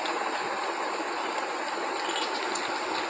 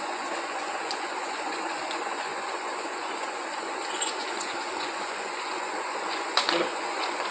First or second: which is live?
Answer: first